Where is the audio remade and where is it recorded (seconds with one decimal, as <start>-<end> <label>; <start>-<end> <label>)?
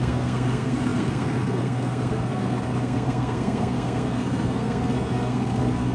0.0-5.9 remade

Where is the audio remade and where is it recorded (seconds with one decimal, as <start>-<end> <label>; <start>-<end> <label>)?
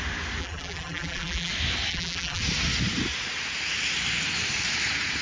0.0-0.4 recorded; 0.4-1.5 remade; 1.5-1.9 recorded; 1.9-2.4 remade; 2.4-5.2 recorded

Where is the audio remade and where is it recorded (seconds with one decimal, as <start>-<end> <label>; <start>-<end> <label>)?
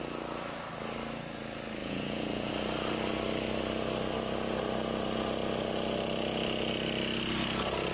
0.0-1.8 recorded; 1.8-2.5 remade; 2.5-7.9 recorded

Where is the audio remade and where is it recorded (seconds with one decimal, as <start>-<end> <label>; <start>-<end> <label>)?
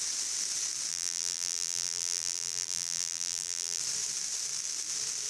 0.0-0.9 recorded; 0.9-3.8 remade; 3.8-5.3 recorded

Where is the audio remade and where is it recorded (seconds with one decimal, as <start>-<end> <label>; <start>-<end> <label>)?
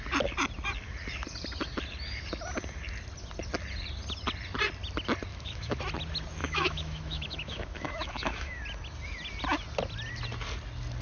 0.0-5.3 recorded; 5.3-5.8 remade; 5.8-6.4 recorded; 6.4-8.6 remade; 8.6-11.0 recorded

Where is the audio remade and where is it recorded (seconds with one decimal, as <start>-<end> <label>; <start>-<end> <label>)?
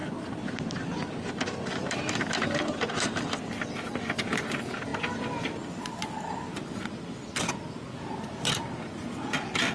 0.0-9.7 recorded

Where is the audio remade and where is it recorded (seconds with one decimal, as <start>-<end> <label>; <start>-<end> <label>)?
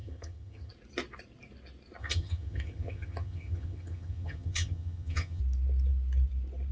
0.0-0.7 remade; 0.7-2.0 recorded; 2.0-5.4 remade; 5.4-6.7 recorded